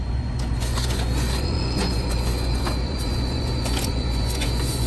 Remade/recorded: remade